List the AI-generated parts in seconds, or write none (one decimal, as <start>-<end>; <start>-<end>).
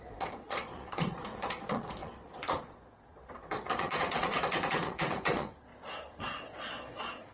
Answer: 0.0-5.7; 6.2-7.3